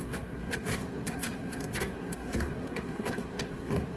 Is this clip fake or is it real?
fake